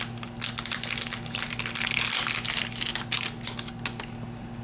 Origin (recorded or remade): recorded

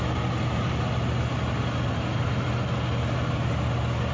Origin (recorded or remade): recorded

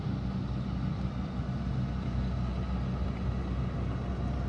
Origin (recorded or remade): recorded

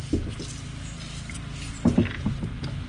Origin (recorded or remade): recorded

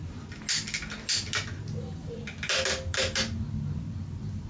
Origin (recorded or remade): recorded